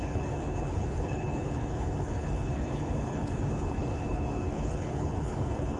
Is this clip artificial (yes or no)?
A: yes